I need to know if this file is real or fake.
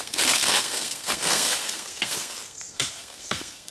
fake